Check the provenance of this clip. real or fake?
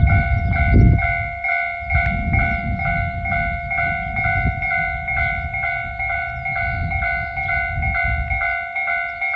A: real